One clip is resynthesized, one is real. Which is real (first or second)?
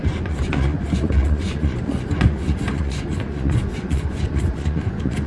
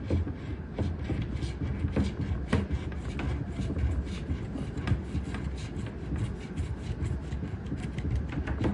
second